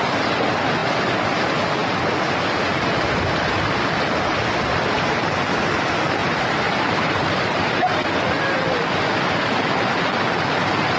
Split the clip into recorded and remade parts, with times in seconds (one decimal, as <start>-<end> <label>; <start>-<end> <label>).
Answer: 0.0-6.2 recorded; 6.2-8.0 remade; 8.0-11.0 recorded